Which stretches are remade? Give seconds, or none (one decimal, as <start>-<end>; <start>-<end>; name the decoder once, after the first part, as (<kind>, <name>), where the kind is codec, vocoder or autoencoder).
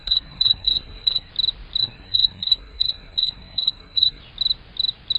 0.0-1.3 (codec, SNAC); 1.8-4.2